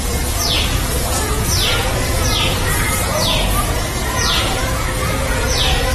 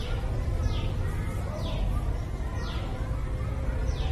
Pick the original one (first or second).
second